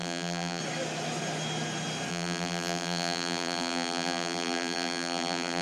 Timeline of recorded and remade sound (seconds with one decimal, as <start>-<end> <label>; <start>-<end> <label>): 0.0-0.6 remade; 0.6-2.1 recorded; 2.1-5.6 remade